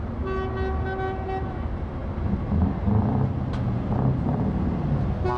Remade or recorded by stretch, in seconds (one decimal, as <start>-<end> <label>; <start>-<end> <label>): 0.0-5.4 recorded